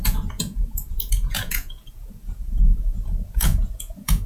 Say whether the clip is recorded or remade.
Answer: remade